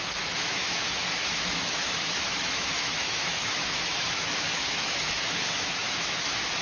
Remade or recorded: remade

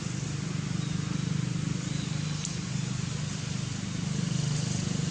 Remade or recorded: recorded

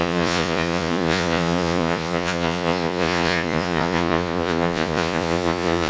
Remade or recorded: remade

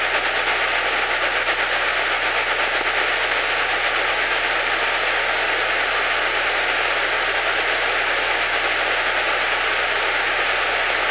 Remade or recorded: recorded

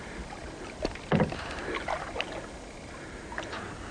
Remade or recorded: recorded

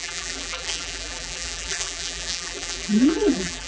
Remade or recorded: remade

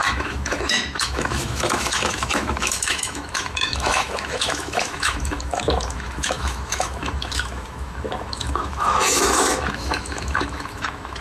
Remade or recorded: remade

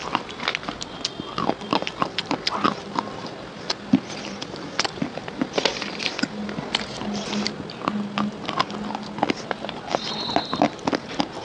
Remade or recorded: recorded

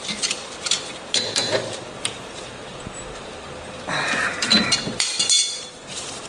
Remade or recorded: remade